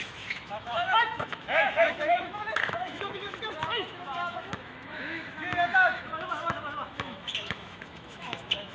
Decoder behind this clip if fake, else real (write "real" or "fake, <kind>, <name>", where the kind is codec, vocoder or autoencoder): fake, autoencoder, DAC-VAE